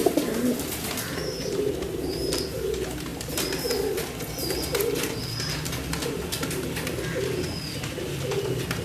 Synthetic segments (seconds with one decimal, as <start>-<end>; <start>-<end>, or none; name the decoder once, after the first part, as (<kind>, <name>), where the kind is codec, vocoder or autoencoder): none